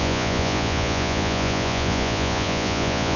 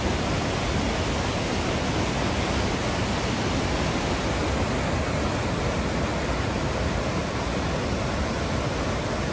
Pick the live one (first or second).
second